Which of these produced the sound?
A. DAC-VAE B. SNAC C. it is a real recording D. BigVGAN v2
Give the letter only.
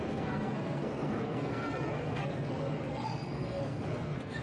B